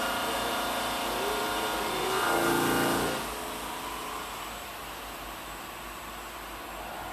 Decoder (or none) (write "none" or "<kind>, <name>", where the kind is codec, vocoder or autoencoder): none